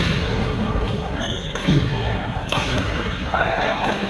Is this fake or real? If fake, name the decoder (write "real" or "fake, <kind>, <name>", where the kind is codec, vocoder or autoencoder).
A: fake, codec, SNAC